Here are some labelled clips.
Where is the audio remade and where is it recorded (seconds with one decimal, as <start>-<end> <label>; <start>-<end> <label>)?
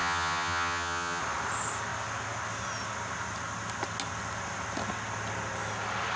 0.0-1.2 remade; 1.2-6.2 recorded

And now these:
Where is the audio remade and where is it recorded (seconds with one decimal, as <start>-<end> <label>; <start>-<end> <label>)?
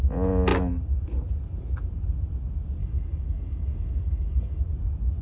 0.0-2.8 recorded; 2.8-4.6 remade; 4.6-5.2 recorded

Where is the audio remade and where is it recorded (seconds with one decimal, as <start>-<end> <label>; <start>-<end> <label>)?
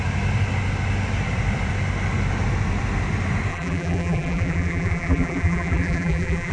0.0-3.5 recorded; 3.5-6.5 remade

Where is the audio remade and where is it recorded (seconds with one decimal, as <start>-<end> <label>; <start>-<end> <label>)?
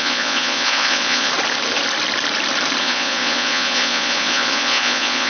0.0-1.3 remade; 1.3-2.8 recorded; 2.8-5.3 remade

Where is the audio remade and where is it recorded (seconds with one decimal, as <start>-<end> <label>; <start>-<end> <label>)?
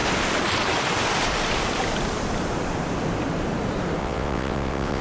0.0-4.0 recorded; 4.0-5.0 remade